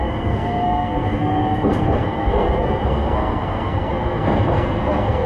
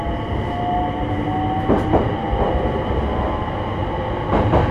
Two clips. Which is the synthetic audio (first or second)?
first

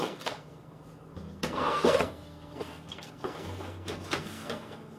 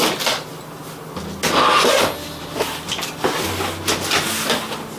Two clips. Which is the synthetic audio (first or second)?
first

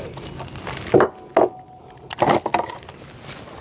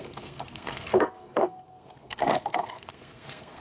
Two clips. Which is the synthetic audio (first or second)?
second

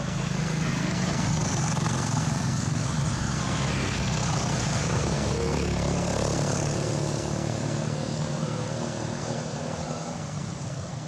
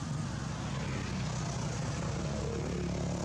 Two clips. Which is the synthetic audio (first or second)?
first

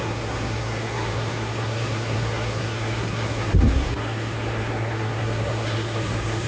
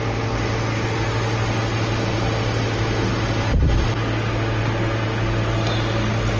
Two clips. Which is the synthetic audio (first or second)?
first